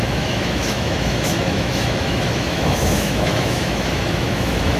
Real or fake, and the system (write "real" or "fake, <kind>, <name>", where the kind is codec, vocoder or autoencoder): fake, autoencoder, DAC-VAE